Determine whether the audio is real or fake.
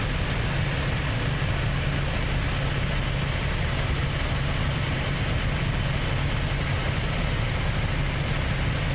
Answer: real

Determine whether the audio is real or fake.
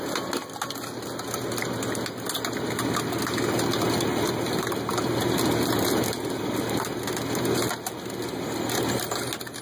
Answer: real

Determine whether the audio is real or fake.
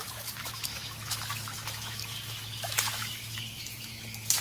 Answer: fake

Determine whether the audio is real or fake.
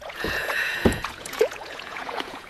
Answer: fake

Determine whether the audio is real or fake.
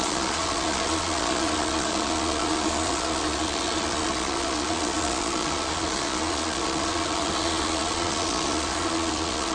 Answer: fake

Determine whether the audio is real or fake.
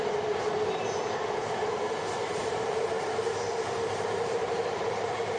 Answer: fake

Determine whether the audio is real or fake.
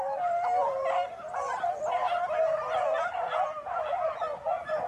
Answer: real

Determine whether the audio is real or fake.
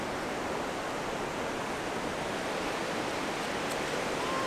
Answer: real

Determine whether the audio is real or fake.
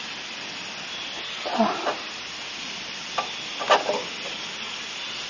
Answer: real